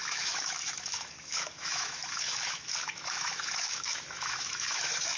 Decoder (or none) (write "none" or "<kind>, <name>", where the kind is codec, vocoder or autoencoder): autoencoder, DAC-VAE